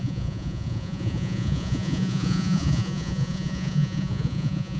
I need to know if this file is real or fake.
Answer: fake